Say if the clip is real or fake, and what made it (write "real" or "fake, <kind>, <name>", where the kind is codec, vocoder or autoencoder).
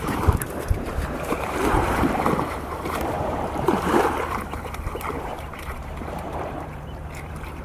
fake, vocoder, BigVGAN v2